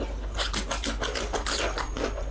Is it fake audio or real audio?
real